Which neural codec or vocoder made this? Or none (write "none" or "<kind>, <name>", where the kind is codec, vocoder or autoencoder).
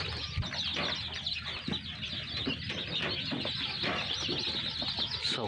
none